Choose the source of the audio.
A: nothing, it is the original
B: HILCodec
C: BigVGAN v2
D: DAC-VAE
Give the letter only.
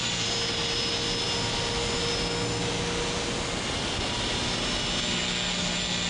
A